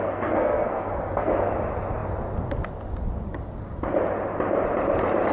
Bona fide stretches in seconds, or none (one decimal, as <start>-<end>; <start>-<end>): 1.3-5.3